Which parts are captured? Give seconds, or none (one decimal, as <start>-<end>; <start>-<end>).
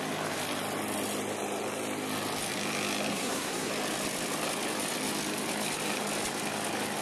0.0-3.1; 3.7-7.0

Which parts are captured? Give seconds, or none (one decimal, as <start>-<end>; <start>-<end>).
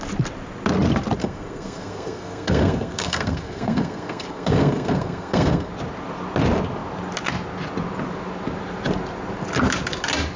0.0-1.2; 5.7-10.4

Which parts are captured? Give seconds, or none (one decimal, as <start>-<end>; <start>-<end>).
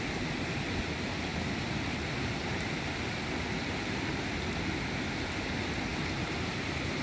0.0-7.0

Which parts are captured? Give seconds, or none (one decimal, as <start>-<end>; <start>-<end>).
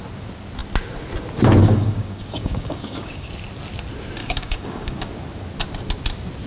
0.0-1.6; 3.3-4.2; 5.1-6.5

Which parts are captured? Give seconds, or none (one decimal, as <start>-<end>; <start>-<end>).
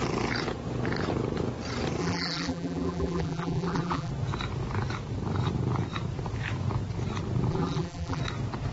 0.0-2.0; 4.1-7.5; 8.2-8.7